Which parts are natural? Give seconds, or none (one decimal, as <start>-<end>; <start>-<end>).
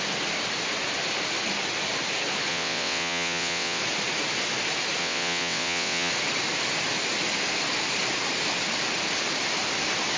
0.0-2.5; 3.8-5.0; 6.1-10.2